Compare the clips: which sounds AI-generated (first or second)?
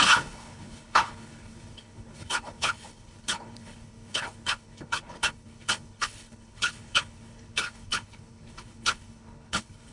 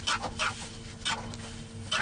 first